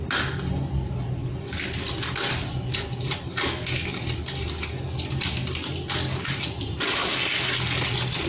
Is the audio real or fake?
real